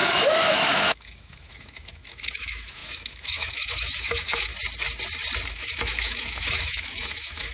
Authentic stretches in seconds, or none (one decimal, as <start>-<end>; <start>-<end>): 4.5-5.5